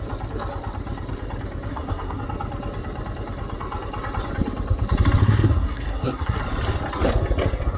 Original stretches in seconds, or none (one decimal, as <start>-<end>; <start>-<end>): 0.0-1.7; 2.2-5.2; 6.4-7.8